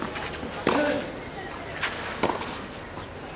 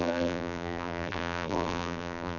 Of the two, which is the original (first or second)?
first